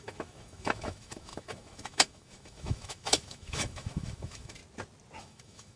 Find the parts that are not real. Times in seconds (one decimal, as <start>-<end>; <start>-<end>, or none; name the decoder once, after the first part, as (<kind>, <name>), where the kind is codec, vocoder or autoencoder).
0.0-4.6 (autoencoder, DAC-VAE); 5.2-5.8